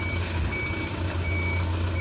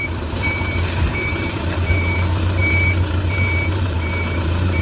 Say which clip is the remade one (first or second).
second